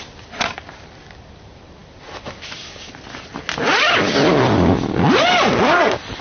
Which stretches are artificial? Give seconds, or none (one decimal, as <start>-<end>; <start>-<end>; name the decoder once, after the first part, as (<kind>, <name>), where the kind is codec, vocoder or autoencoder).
none